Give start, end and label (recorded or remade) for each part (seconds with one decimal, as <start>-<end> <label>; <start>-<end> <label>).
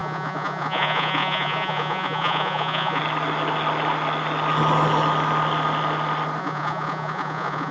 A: 0.0-3.0 remade; 3.0-6.4 recorded; 6.4-7.7 remade